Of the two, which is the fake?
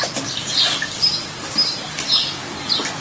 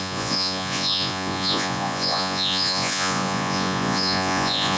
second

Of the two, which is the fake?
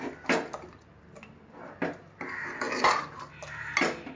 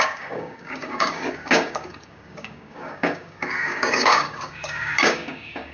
second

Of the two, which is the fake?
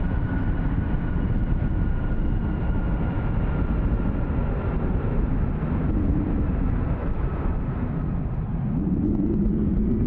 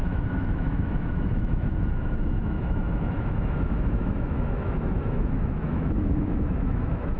second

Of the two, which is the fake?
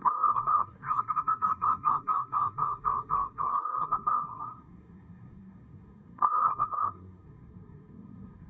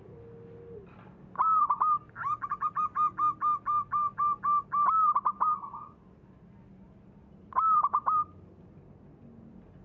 first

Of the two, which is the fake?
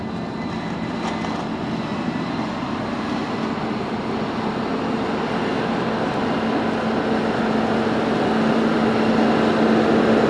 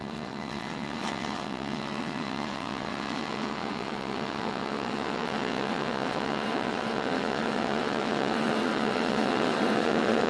second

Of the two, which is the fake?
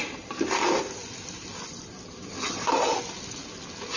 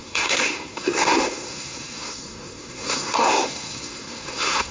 second